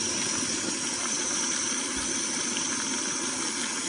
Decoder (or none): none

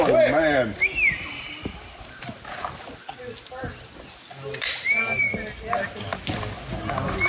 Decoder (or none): none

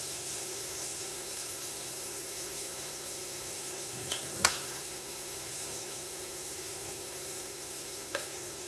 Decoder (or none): codec, SNAC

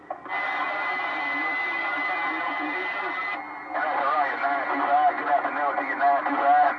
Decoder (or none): none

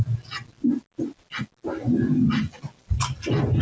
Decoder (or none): none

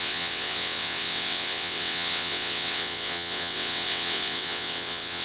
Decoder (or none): vocoder, WaveNeXt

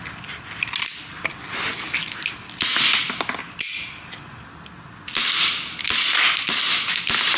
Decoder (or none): none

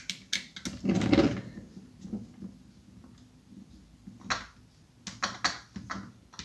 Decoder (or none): none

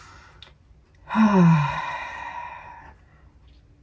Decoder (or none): none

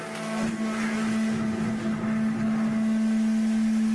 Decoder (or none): none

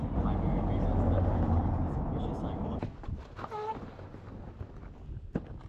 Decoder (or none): none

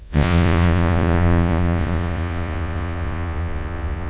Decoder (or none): vocoder, Vocos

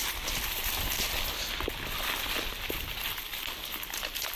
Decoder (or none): none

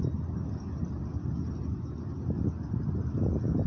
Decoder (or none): none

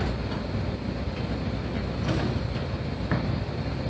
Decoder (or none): none